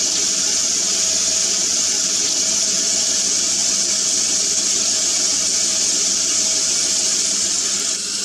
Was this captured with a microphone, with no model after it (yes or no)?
yes